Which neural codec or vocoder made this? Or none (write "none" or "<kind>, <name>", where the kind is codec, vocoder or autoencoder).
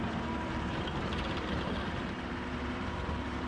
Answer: vocoder, BigVGAN v2